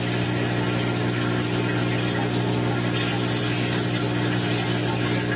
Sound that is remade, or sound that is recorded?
recorded